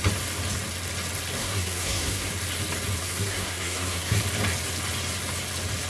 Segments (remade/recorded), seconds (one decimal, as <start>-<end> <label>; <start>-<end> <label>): 0.0-1.4 recorded; 1.4-2.3 remade; 2.3-3.0 recorded; 3.0-4.2 remade; 4.2-5.9 recorded